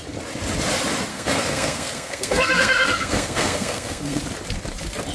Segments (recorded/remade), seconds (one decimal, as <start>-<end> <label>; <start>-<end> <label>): 0.0-1.1 recorded; 1.1-4.2 remade; 4.2-5.1 recorded